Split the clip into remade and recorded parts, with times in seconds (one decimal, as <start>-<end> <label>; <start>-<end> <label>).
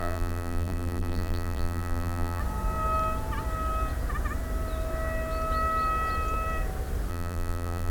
0.0-2.4 remade; 2.4-7.1 recorded; 7.1-7.9 remade